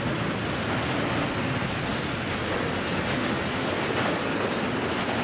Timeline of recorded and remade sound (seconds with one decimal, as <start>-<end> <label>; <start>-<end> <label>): 0.0-5.2 recorded